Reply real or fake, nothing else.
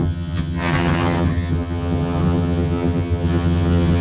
fake